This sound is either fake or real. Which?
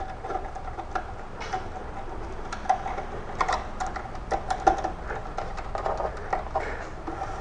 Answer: real